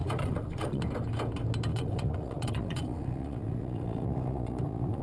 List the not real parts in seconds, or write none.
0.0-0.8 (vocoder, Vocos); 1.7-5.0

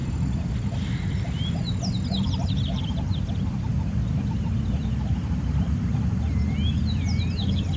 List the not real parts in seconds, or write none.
none

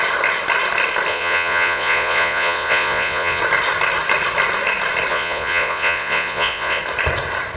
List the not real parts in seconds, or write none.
1.1-3.4 (vocoder, Vocos); 5.1-6.8

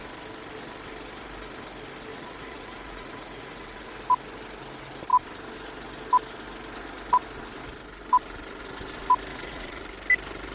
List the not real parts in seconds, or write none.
2.1-3.9 (vocoder, Vocos); 9.3-9.8

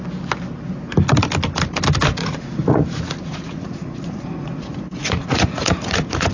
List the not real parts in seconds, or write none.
2.2-6.3 (vocoder, Vocos)

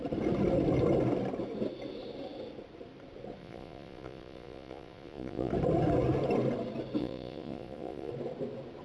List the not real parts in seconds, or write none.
3.4-5.5 (vocoder, Vocos); 7.0-8.1